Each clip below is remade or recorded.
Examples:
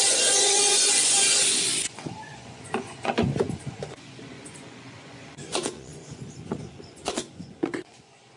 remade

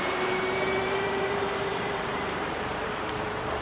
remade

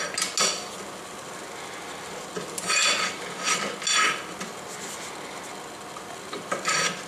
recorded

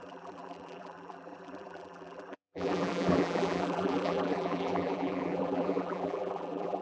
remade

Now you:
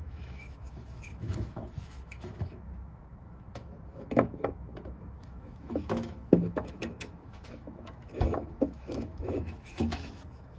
remade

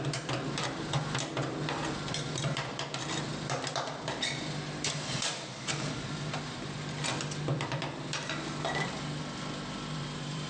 remade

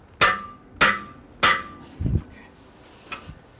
recorded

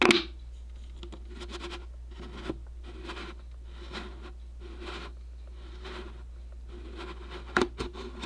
recorded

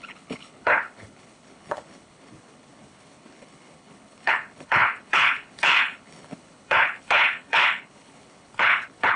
remade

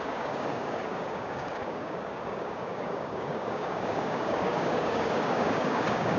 remade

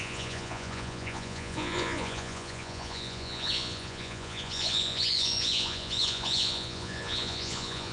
remade